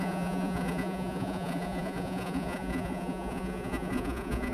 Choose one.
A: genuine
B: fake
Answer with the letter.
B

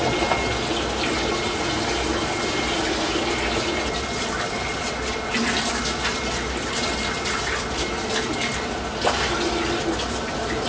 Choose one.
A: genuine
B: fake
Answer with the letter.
A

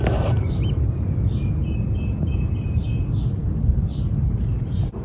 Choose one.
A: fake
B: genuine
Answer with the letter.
B